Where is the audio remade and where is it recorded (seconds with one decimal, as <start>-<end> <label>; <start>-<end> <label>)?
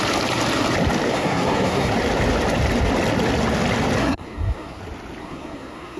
0.0-1.1 recorded; 1.1-1.9 remade; 1.9-4.0 recorded; 4.0-4.8 remade; 4.8-5.2 recorded; 5.2-6.0 remade